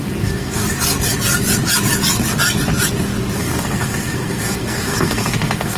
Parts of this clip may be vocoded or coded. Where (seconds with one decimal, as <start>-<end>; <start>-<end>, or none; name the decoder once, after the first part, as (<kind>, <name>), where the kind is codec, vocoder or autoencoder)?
0.0-0.6 (codec, SNAC); 3.4-5.8